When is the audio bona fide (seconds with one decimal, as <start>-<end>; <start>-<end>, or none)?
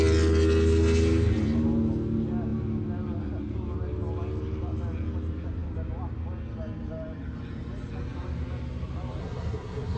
0.0-9.2